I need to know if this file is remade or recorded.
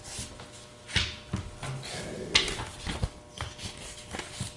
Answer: recorded